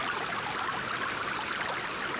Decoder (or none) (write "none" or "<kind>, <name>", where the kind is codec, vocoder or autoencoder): none